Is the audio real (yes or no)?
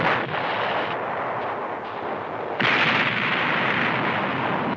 yes